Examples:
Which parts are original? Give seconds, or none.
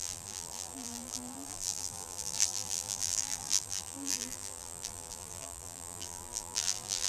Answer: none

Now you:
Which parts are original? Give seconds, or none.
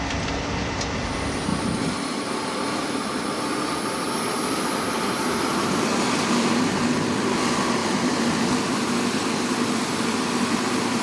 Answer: 1.5-4.8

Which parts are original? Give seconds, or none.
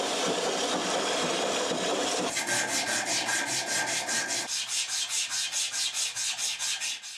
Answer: 0.0-7.2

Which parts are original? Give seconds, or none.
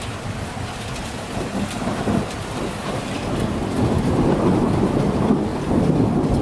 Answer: 0.0-1.0; 1.8-6.4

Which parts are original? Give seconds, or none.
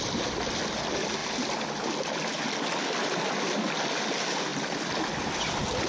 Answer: 0.0-1.2; 1.9-4.5; 5.4-5.9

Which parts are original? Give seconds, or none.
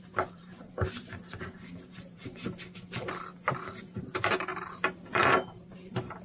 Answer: 2.2-3.6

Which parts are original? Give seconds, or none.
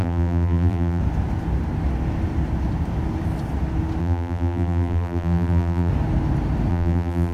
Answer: 1.0-4.0; 5.9-6.7